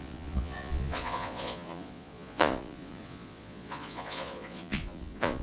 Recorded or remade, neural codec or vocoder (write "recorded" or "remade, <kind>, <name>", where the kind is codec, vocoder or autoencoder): remade, vocoder, Vocos